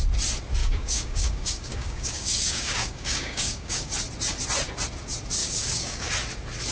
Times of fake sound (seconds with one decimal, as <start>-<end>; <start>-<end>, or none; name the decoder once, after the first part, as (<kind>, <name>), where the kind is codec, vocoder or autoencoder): 0.6-3.9 (codec, DAC); 5.4-6.1